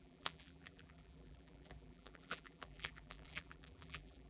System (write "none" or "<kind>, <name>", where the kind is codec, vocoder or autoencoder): vocoder, BigVGAN v2